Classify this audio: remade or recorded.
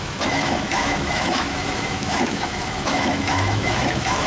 remade